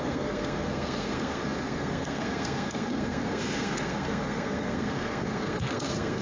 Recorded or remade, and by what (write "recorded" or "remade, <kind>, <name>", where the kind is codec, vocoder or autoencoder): remade, codec, SNAC